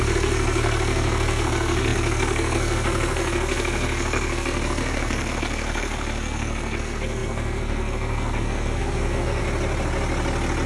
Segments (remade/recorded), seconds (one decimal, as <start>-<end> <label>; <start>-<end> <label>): 0.0-9.4 remade; 9.4-10.7 recorded